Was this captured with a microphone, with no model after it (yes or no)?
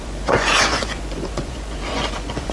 no